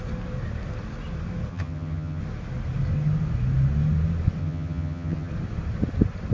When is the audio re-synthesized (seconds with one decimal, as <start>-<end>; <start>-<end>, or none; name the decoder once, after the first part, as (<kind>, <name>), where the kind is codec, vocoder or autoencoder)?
1.5-2.2 (vocoder, HiFi-GAN); 4.4-5.3